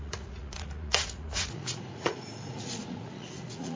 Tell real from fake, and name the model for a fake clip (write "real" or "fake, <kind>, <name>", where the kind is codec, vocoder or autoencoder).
fake, vocoder, Vocos